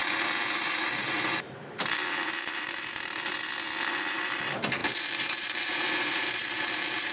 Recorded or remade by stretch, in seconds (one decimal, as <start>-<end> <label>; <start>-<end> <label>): 0.0-3.3 remade; 3.3-4.8 recorded; 4.8-7.1 remade